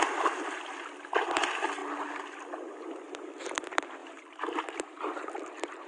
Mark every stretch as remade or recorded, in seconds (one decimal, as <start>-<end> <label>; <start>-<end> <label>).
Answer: 0.0-5.9 recorded